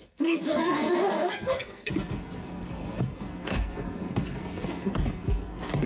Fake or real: fake